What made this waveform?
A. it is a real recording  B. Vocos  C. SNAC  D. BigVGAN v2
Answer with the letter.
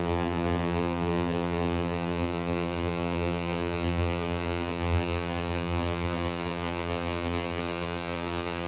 D